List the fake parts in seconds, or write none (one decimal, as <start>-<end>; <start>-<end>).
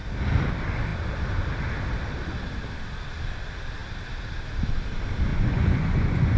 5.3-6.4